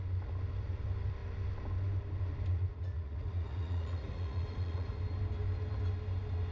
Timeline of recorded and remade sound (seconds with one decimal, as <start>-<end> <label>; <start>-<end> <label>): 0.0-2.5 recorded; 2.5-5.0 remade; 5.0-6.5 recorded